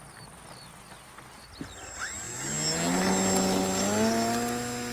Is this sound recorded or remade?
recorded